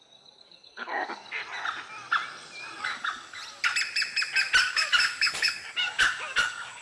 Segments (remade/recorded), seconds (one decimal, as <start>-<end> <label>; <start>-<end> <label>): 0.0-1.4 remade; 1.4-2.8 recorded; 2.8-3.4 remade; 3.4-4.6 recorded; 4.6-6.8 remade

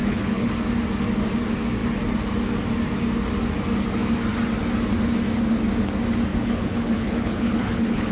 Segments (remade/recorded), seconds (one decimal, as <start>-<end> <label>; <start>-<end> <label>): 0.0-0.5 remade; 0.5-6.3 recorded; 6.3-8.1 remade

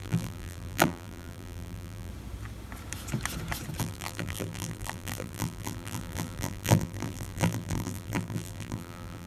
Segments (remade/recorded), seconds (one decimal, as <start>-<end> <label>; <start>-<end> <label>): 0.0-2.1 remade; 2.1-3.8 recorded; 3.8-9.3 remade

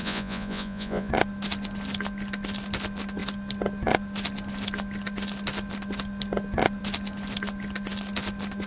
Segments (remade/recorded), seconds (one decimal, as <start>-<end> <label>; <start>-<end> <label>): 0.0-1.1 remade; 1.1-8.7 recorded

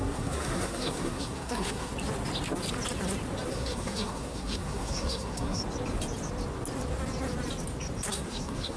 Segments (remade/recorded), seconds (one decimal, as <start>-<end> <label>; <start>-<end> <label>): 0.0-1.9 remade; 1.9-3.5 recorded; 3.5-5.6 remade; 5.6-8.1 recorded; 8.1-8.8 remade